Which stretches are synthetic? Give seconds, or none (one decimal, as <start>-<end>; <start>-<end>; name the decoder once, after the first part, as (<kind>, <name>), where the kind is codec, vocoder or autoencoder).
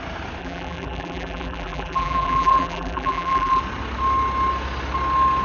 0.4-3.6 (vocoder, BigVGAN v2)